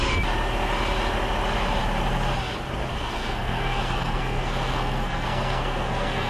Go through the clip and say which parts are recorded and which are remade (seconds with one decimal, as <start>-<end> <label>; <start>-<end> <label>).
0.0-2.9 recorded; 2.9-6.3 remade